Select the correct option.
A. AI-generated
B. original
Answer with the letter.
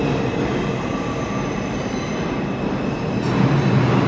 B